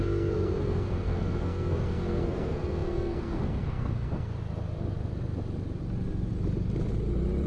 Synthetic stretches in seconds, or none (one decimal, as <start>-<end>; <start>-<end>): 0.0-4.3